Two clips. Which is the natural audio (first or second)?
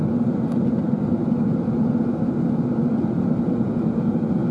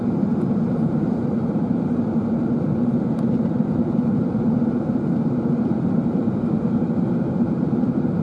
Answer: first